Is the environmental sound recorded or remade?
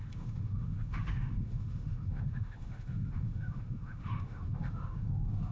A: remade